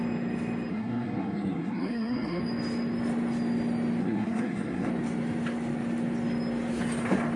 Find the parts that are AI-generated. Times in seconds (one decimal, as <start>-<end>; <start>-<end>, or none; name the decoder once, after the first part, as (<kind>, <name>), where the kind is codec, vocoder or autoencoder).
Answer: 0.7-2.4 (codec, SNAC); 4.0-4.9